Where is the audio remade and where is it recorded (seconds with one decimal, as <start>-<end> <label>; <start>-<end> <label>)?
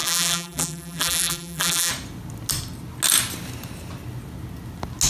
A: 0.0-1.9 remade; 1.9-5.1 recorded